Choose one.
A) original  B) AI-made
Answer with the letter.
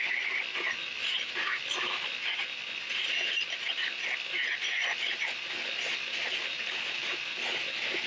A